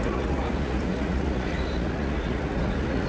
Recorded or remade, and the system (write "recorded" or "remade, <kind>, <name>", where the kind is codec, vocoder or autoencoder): remade, vocoder, Vocos